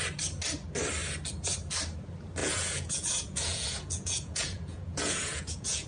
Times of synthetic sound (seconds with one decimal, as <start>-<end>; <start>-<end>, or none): 2.4-5.9